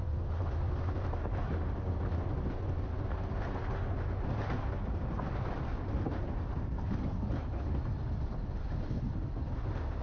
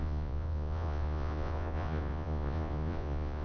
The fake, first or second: second